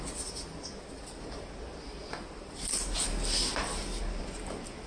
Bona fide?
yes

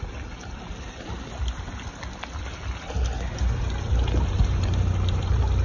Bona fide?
yes